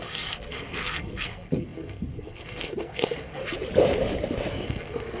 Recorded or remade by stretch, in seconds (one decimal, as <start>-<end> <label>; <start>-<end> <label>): 0.0-3.4 remade; 3.4-4.5 recorded; 4.5-5.2 remade